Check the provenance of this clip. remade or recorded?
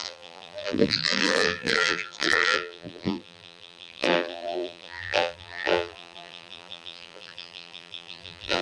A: remade